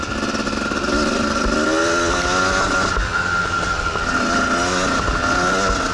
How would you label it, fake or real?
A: real